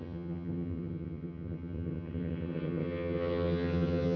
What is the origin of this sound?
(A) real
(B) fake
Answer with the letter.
B